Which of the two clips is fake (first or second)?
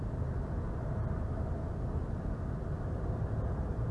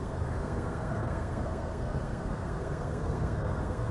second